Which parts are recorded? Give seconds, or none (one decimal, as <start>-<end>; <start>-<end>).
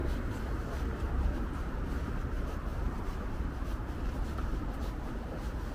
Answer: 1.8-2.7; 3.8-5.7